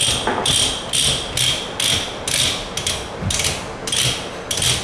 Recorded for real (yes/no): yes